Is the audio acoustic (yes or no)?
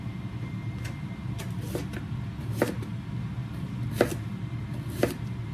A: yes